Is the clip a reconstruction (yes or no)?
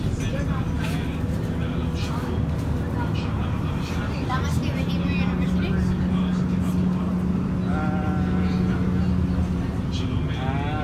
no